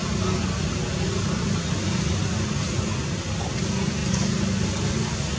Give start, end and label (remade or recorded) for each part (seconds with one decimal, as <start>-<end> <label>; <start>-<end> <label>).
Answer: 0.0-5.4 recorded